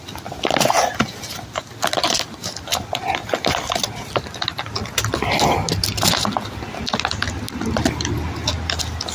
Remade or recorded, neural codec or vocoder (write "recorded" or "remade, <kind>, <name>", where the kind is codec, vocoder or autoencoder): recorded